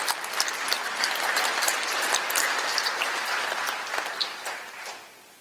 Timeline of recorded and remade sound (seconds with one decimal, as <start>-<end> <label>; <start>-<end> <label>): 0.0-5.4 recorded